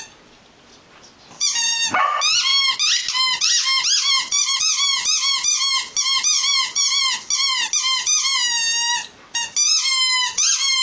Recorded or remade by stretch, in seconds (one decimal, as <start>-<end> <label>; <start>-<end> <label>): 0.0-10.8 recorded